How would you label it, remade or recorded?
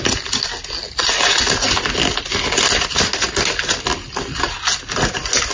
recorded